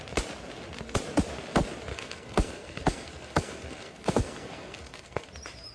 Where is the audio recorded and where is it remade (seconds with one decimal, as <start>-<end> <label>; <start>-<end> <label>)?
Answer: 0.0-1.9 recorded; 1.9-5.3 remade; 5.3-5.7 recorded